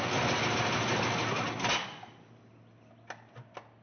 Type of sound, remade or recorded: recorded